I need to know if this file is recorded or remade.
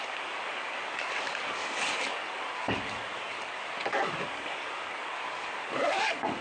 remade